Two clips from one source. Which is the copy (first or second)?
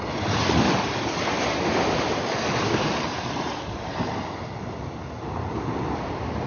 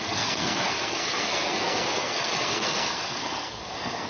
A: second